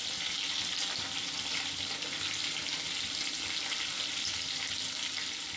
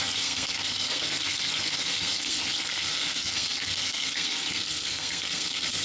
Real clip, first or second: first